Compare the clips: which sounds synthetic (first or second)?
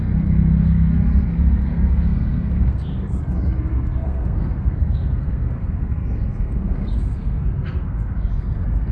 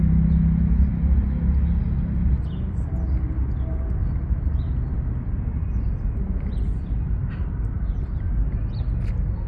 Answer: first